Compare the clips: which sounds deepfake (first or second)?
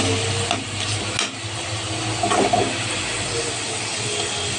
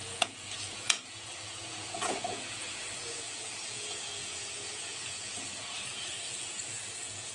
second